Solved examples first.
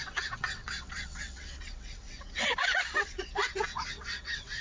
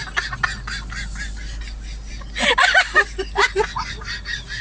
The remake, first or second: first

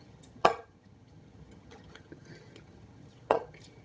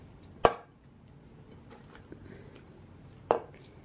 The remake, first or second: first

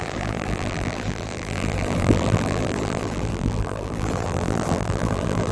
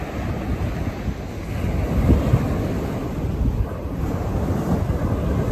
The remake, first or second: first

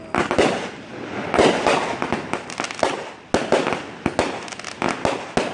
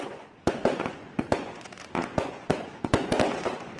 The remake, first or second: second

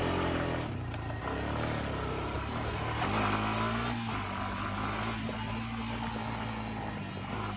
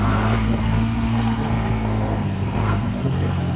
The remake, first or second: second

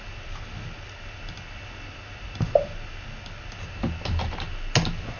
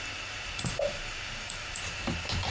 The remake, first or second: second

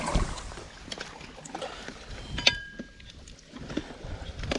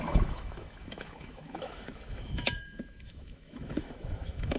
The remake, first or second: second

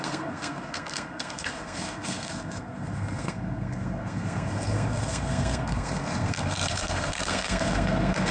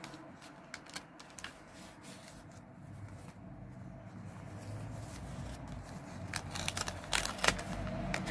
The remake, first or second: first